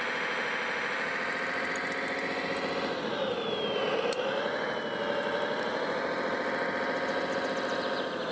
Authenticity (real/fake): real